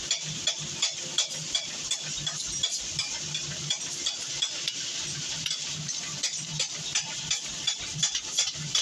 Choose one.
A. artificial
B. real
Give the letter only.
B